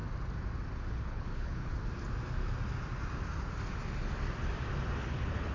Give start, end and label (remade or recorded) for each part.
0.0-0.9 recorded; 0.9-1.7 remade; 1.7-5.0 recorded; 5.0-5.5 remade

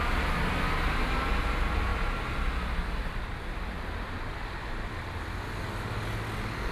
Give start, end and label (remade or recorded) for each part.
0.0-1.9 recorded; 1.9-5.2 remade; 5.2-6.7 recorded

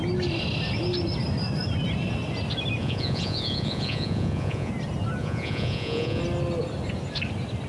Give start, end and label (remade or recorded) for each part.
0.0-2.8 recorded; 2.8-4.7 remade; 4.7-5.2 recorded; 5.2-6.2 remade; 6.2-7.7 recorded

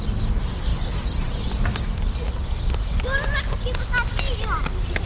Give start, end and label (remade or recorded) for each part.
0.0-5.1 recorded

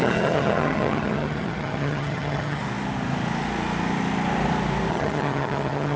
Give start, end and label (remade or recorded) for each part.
0.0-2.6 remade; 2.6-4.9 recorded; 4.9-6.0 remade

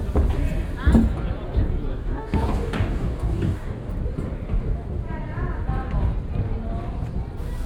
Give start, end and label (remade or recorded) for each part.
0.0-1.9 recorded; 1.9-3.9 remade; 3.9-7.7 recorded